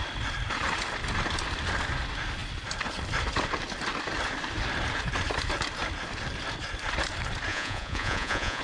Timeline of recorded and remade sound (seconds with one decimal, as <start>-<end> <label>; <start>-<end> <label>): 0.0-7.5 recorded; 7.5-8.6 remade